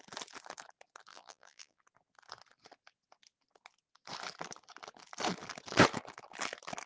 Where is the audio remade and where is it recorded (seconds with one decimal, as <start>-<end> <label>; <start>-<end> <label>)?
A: 0.0-1.1 recorded; 1.1-1.8 remade; 1.8-6.9 recorded

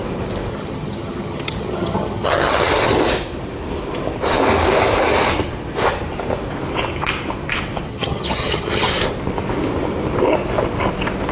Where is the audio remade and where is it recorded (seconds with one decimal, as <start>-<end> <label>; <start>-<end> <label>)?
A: 0.0-0.5 recorded; 0.5-3.0 remade; 3.0-7.9 recorded; 7.9-8.9 remade; 8.9-11.3 recorded